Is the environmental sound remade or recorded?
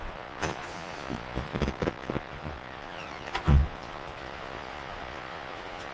remade